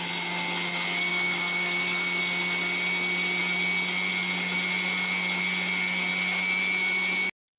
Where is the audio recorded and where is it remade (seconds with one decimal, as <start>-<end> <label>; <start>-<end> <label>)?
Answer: 0.0-1.1 recorded; 1.1-2.2 remade; 2.2-7.6 recorded